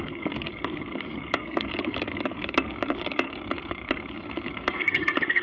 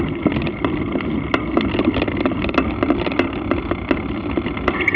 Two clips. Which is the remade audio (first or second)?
first